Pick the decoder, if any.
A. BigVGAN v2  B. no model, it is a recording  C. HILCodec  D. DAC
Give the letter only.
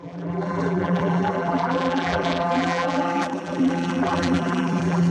A